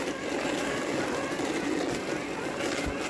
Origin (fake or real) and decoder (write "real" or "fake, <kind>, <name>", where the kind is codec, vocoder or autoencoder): real